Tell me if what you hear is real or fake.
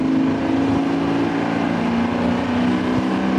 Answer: real